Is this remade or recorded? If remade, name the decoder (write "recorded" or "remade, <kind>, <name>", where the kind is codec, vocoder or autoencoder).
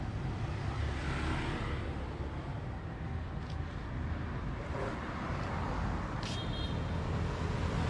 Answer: recorded